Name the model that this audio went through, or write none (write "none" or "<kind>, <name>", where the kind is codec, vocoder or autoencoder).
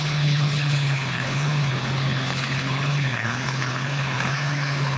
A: codec, HILCodec